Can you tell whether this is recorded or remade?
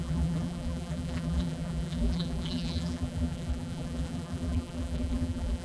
remade